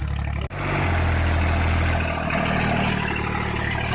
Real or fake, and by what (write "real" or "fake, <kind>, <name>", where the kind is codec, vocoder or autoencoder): real